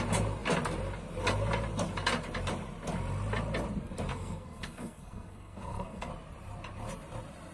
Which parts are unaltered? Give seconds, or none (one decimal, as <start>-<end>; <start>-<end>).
0.0-4.1; 6.1-7.5